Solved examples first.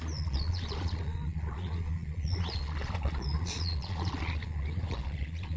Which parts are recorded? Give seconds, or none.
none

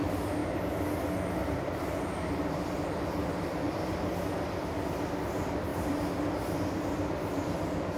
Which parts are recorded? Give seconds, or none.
0.0-5.7; 6.3-8.0

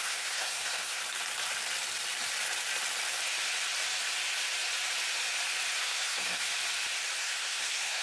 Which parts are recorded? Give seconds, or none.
1.0-5.8; 6.5-7.2

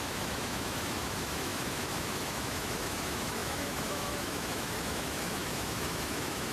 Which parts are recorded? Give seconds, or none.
none

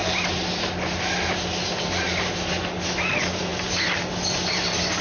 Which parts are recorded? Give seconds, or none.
0.0-5.0